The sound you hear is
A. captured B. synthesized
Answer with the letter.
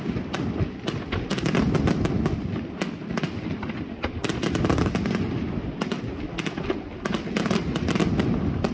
A